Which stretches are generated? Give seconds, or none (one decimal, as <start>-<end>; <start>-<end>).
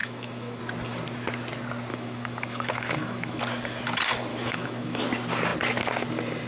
0.0-0.6; 1.9-3.4; 4.3-5.0